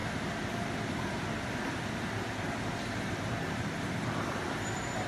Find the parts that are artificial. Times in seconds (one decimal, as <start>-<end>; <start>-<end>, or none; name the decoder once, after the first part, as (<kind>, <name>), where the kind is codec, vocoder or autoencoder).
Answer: 3.1-5.1 (vocoder, BigVGAN v2)